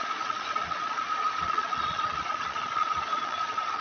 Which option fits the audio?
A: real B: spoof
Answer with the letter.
B